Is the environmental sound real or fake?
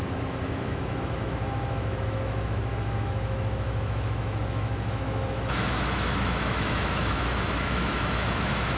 fake